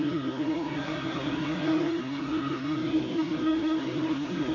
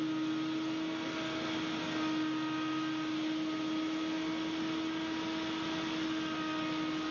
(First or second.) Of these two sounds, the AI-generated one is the first